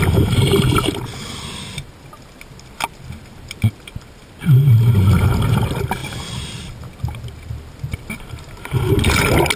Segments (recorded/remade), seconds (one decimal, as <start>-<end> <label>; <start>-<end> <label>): 0.0-9.6 recorded